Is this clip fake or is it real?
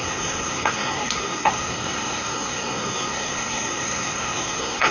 fake